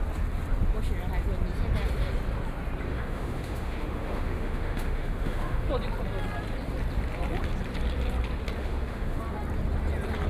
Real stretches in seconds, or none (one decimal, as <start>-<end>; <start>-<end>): 0.0-2.9; 5.7-8.6; 9.2-10.3